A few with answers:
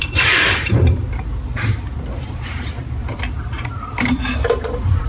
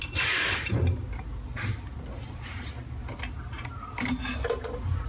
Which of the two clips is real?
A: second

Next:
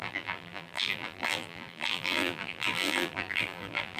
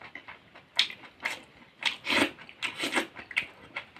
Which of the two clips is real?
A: second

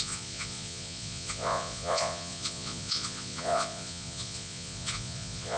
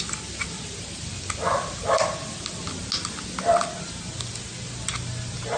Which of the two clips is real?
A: second